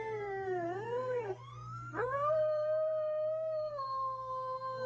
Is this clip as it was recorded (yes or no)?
no